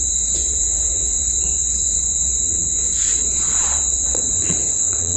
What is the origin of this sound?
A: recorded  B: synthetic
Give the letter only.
B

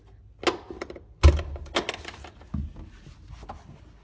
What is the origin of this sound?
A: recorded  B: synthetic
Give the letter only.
A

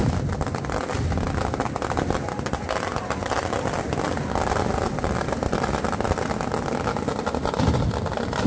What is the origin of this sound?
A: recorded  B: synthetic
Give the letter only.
A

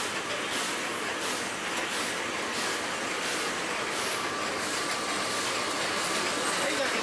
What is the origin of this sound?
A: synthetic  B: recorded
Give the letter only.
B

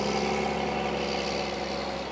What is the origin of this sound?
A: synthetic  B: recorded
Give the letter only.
B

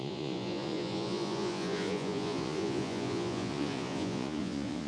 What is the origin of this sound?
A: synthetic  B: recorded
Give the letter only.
A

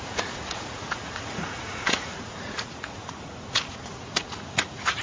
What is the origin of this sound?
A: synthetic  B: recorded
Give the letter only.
A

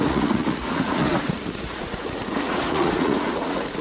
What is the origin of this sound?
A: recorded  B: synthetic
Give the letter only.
B